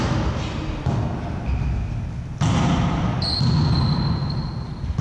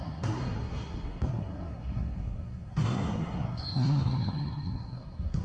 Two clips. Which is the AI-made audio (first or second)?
second